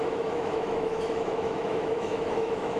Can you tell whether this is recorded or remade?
remade